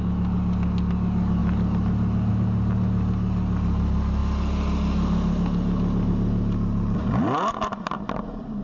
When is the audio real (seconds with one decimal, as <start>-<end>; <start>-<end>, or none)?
0.0-8.6